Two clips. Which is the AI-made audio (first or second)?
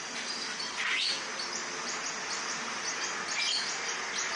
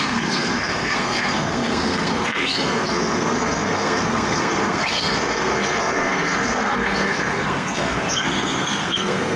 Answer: second